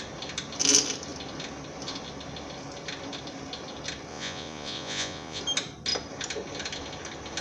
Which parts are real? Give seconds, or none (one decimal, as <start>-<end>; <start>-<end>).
0.0-4.1; 5.4-7.4